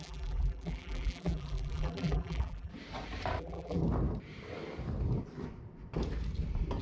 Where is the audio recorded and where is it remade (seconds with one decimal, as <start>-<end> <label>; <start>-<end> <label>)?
0.0-2.7 remade; 2.7-3.4 recorded; 3.4-3.8 remade; 3.8-6.8 recorded